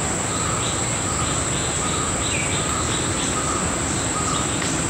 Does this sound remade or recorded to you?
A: recorded